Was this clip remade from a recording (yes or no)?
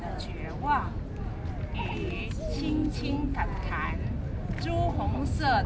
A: no